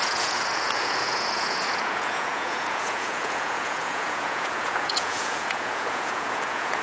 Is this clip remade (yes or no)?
yes